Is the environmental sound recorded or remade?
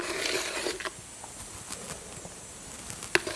recorded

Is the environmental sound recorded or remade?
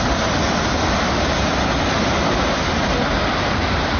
recorded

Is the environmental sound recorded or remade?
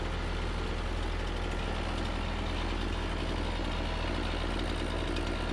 recorded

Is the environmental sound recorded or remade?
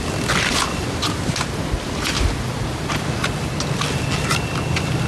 recorded